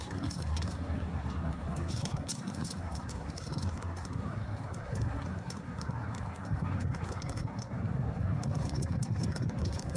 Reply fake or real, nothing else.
fake